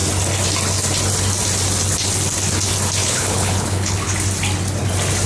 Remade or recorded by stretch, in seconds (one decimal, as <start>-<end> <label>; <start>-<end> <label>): 0.0-3.0 recorded; 3.0-4.1 remade; 4.1-5.3 recorded